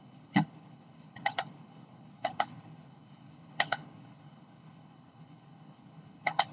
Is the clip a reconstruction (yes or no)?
yes